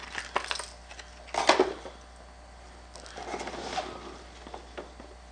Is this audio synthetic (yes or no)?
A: no